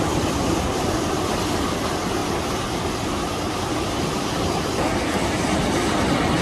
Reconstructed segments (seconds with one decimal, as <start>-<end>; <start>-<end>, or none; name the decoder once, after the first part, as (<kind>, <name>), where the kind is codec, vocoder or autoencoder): none